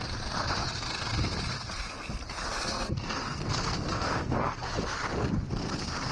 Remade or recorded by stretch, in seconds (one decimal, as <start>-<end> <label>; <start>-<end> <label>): 0.0-2.5 recorded; 2.5-4.7 remade; 4.7-6.1 recorded